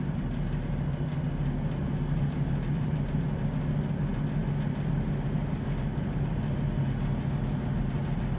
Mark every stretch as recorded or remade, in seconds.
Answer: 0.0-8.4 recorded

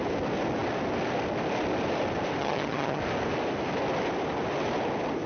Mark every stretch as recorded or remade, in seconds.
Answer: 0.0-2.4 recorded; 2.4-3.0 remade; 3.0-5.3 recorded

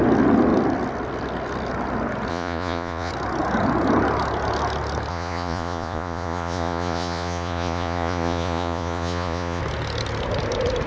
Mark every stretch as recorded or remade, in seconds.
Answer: 0.0-2.3 recorded; 2.3-3.1 remade; 3.1-5.1 recorded; 5.1-9.6 remade; 9.6-10.9 recorded

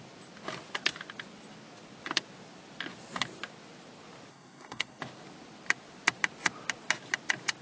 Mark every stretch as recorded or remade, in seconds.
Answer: 0.0-4.3 recorded; 4.3-5.0 remade; 5.0-7.6 recorded

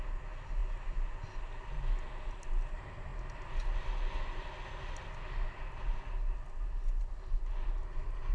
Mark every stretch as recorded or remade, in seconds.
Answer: 0.0-8.3 recorded

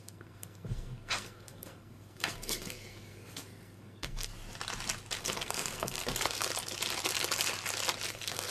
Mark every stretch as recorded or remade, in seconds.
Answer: 0.0-4.3 remade; 4.3-5.2 recorded; 5.2-6.5 remade; 6.5-8.1 recorded; 8.1-8.5 remade